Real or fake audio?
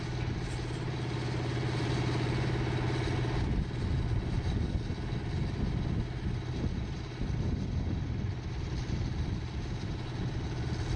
real